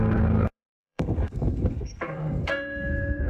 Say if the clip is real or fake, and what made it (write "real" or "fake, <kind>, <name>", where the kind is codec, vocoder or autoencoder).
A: fake, codec, SNAC